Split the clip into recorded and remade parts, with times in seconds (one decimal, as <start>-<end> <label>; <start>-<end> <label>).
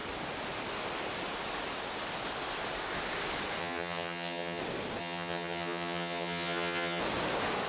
0.0-3.6 recorded; 3.6-4.6 remade; 4.6-5.0 recorded; 5.0-7.0 remade; 7.0-7.7 recorded